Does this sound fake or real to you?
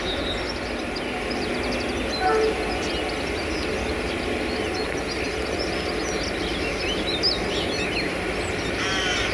real